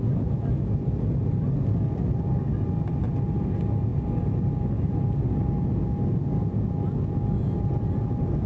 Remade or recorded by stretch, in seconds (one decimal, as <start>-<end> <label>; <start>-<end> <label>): 0.0-8.5 recorded